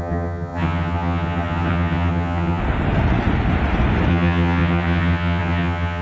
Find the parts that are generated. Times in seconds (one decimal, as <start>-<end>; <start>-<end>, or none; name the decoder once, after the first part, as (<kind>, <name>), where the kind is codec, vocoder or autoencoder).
0.0-2.6 (vocoder, HiFi-GAN); 4.1-6.0